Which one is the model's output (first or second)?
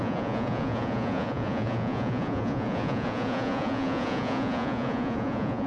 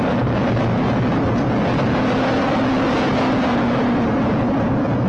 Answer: first